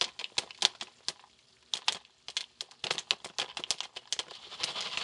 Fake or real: real